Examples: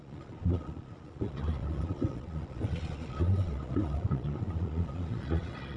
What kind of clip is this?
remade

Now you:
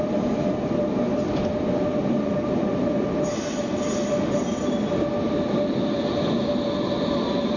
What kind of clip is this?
recorded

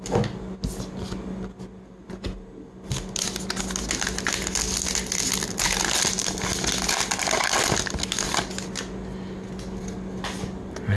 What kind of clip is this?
recorded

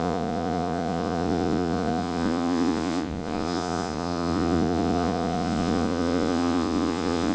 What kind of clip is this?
remade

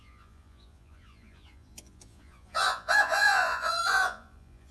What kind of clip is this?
remade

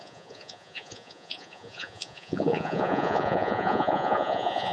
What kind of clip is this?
remade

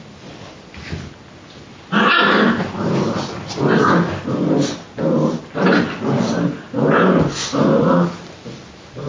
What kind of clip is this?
recorded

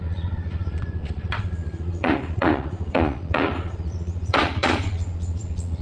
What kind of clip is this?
remade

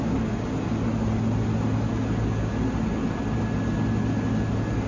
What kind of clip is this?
recorded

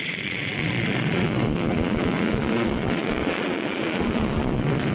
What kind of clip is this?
remade